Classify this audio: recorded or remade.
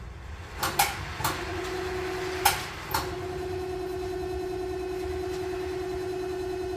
recorded